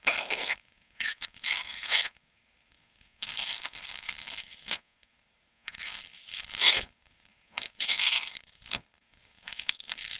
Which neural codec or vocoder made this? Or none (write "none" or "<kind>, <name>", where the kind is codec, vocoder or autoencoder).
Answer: codec, SNAC